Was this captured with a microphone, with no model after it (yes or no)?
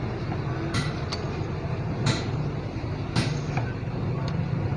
yes